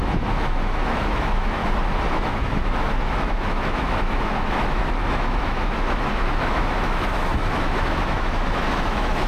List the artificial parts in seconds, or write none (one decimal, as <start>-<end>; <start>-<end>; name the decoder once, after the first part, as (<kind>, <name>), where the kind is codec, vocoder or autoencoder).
0.0-1.6 (autoencoder, DAC-VAE); 2.1-9.3